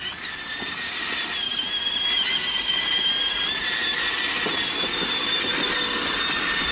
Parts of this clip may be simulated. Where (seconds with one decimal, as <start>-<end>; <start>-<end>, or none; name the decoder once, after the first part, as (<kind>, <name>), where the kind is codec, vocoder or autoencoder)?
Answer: none